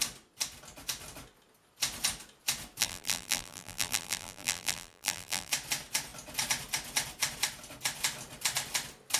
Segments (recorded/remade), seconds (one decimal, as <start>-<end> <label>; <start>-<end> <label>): 0.0-2.8 recorded; 2.8-5.5 remade; 5.5-9.2 recorded